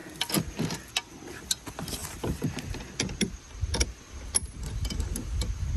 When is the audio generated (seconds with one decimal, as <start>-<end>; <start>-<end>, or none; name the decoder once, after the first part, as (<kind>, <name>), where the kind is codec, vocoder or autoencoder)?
none